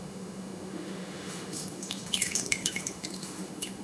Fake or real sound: fake